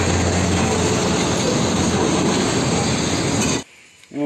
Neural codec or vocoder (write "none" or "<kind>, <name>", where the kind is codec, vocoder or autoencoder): none